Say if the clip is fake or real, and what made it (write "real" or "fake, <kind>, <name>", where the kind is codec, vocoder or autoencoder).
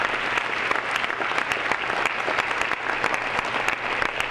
real